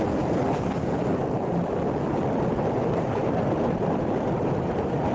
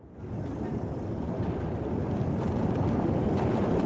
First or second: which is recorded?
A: first